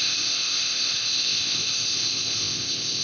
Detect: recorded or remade remade